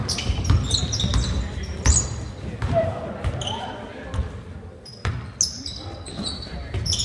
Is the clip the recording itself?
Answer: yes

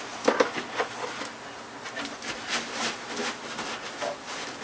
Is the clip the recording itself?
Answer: yes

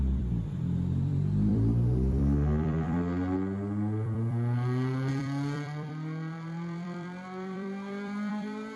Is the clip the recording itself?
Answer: no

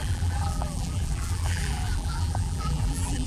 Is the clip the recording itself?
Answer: no